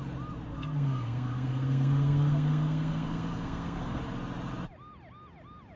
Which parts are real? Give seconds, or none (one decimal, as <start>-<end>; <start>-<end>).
0.0-0.5; 4.0-5.8